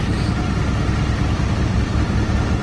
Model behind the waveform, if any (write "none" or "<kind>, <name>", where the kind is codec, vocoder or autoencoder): none